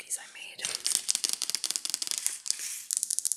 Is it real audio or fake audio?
real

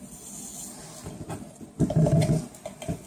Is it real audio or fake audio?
real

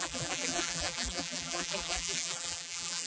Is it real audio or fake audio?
fake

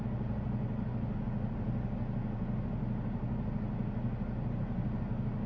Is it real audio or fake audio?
real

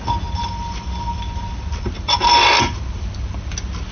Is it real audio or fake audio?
real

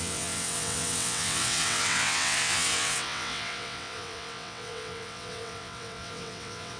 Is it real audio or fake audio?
fake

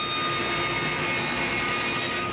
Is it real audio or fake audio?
real